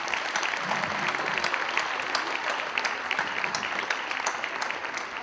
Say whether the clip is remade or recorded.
recorded